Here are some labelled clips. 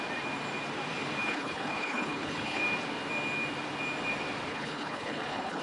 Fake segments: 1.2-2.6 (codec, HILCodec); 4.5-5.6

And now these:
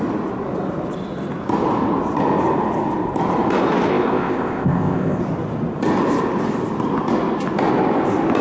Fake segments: 3.9-5.2 (codec, ZipCodec)

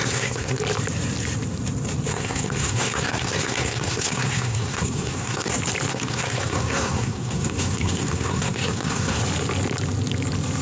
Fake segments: 0.0-0.6 (codec, SNAC); 2.1-5.5; 5.9-9.2

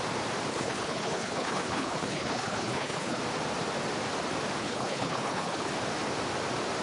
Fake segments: 0.5-3.2 (codec, HILCodec); 4.6-5.7

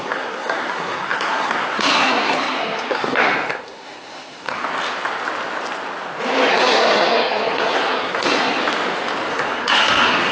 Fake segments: 0.0-4.7 (codec, SNAC); 6.5-8.6; 9.3-10.3

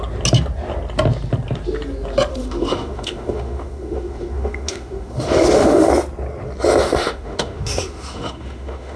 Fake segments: 2.3-5.9 (autoencoder, DAC-VAE); 6.8-9.0